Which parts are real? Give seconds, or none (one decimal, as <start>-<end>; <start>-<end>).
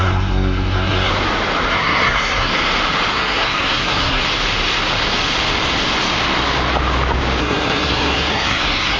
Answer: 1.1-1.7; 2.5-3.1; 4.2-7.4